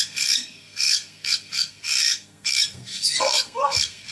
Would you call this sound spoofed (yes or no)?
yes